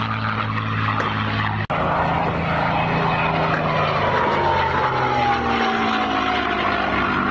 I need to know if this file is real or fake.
real